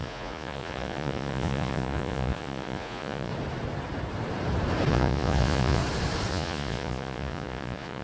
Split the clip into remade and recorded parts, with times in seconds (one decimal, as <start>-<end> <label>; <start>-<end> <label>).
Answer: 0.0-3.3 remade; 3.3-4.9 recorded; 4.9-5.8 remade; 5.8-6.3 recorded; 6.3-8.0 remade